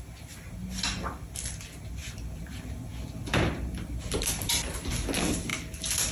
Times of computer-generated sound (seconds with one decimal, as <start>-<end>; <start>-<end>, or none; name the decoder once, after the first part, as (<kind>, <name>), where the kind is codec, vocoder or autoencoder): none